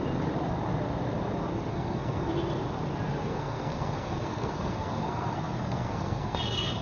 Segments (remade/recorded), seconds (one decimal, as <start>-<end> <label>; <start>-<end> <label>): 0.0-1.7 recorded; 1.7-2.3 remade; 2.3-3.2 recorded; 3.2-6.8 remade